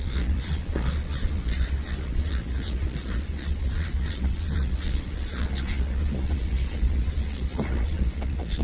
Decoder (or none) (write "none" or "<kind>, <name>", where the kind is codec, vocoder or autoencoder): vocoder, Vocos